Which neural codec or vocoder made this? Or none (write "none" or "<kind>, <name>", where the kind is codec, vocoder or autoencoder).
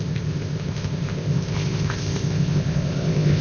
codec, ZipCodec